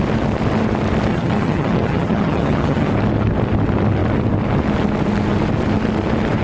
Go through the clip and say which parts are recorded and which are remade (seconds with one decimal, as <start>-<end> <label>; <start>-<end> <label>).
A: 0.0-1.1 recorded; 1.1-2.9 remade; 2.9-6.4 recorded